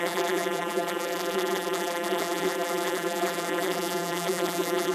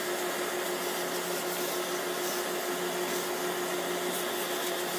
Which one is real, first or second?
second